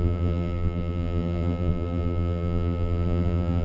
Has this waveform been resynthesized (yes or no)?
yes